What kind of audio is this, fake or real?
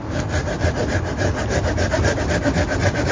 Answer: real